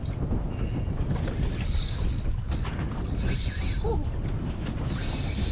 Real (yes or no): yes